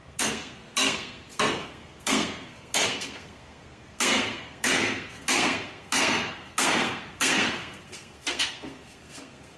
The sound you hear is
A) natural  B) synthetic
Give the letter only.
B